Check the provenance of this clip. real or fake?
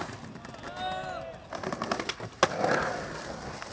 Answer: real